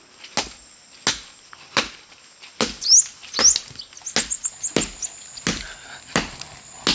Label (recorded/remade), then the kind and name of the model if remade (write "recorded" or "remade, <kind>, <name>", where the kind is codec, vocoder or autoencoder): recorded